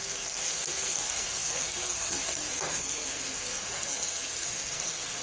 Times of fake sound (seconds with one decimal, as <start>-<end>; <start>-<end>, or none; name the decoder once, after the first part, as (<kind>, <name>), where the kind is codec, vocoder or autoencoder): 0.0-5.2 (codec, SNAC)